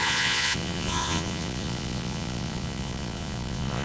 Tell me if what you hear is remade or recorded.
remade